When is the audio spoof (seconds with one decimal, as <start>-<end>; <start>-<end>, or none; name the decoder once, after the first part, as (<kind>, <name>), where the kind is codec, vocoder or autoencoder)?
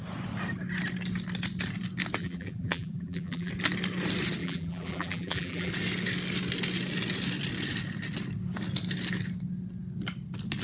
2.2-3.5 (vocoder, BigVGAN v2); 4.4-5.7